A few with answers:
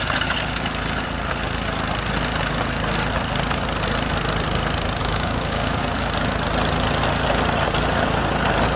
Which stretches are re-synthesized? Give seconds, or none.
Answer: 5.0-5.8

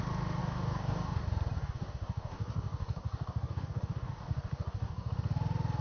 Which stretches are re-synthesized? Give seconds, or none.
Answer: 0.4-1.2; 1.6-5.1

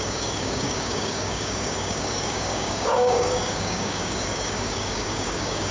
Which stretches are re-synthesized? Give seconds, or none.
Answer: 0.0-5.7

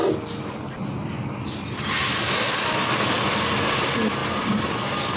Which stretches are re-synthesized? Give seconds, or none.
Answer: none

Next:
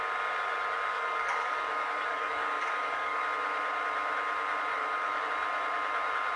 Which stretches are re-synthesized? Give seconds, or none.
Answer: 0.9-3.2; 4.7-5.3

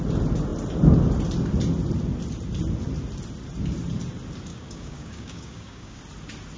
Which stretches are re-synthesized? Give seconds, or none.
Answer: 4.5-6.0